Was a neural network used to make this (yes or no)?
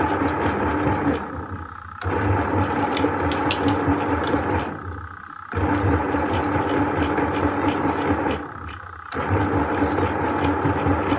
no